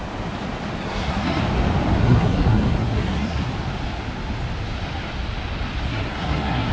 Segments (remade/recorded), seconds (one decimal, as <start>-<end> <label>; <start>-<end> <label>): 0.0-0.8 recorded; 0.8-1.4 remade; 1.4-2.0 recorded; 2.0-3.5 remade; 3.5-5.9 recorded; 5.9-6.7 remade